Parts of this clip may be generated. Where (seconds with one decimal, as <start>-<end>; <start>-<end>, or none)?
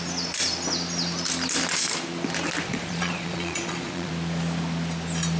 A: 2.7-4.1